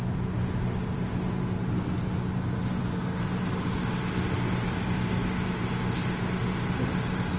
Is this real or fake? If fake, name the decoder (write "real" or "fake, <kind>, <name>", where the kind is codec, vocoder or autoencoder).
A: real